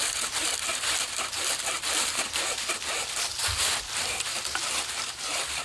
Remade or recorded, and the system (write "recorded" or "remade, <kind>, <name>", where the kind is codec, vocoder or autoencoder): remade, vocoder, BigVGAN v2